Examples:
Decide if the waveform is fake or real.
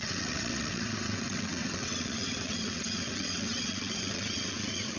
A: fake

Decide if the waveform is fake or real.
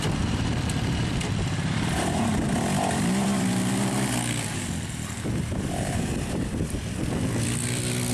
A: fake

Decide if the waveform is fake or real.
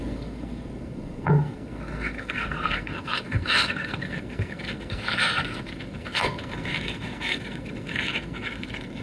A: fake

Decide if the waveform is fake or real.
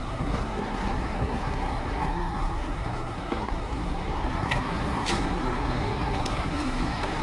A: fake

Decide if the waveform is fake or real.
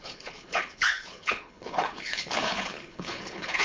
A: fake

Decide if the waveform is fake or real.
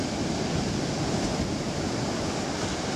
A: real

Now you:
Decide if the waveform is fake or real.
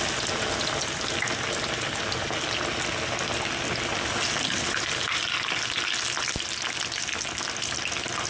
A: real